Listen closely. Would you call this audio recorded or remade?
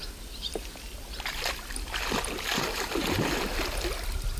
recorded